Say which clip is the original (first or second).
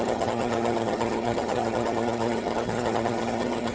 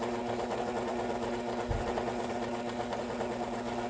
second